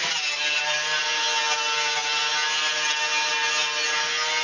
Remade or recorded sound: recorded